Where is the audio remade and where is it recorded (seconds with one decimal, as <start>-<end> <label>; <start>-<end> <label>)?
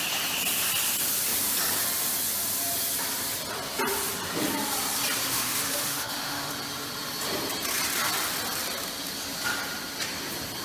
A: 0.0-5.3 recorded; 5.3-6.5 remade; 6.5-10.6 recorded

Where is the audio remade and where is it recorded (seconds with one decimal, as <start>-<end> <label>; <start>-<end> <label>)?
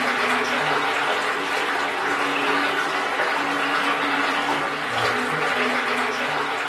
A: 0.0-6.7 recorded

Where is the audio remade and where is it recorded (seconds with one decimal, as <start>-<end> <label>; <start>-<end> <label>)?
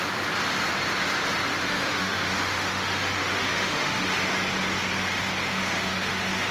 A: 0.0-1.5 recorded; 1.5-4.3 remade; 4.3-5.5 recorded; 5.5-6.5 remade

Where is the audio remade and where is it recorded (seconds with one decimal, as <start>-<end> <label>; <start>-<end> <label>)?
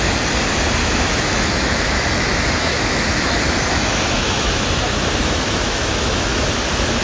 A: 0.0-0.8 recorded; 0.8-4.8 remade; 4.8-5.2 recorded; 5.2-6.4 remade; 6.4-7.0 recorded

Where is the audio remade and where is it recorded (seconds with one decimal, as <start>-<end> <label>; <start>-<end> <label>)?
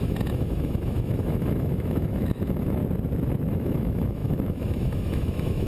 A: 0.0-2.8 remade; 2.8-3.5 recorded; 3.5-5.7 remade